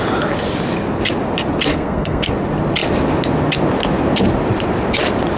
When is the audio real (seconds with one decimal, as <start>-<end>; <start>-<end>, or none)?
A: 0.0-1.7; 2.3-5.4